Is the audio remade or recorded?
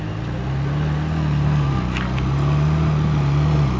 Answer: recorded